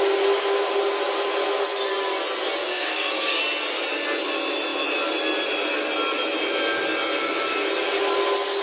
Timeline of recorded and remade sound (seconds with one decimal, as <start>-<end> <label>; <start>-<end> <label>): 0.0-2.6 recorded; 2.6-3.4 remade; 3.4-8.6 recorded